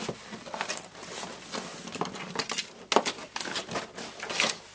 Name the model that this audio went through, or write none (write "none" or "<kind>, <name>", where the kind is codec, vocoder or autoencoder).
none